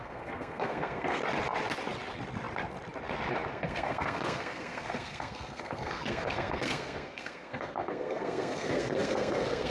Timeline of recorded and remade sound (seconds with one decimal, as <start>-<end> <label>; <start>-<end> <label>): 0.0-1.2 remade; 1.2-3.5 recorded; 3.5-9.7 remade